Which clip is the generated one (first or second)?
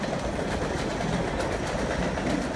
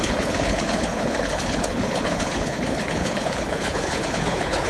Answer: second